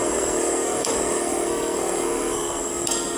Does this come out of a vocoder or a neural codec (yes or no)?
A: yes